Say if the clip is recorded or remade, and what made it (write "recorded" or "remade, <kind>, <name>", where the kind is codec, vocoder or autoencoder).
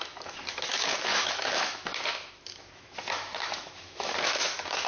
remade, autoencoder, DAC-VAE